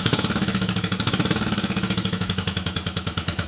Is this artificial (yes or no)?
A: yes